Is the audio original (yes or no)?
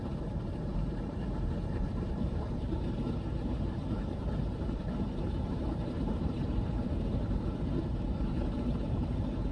no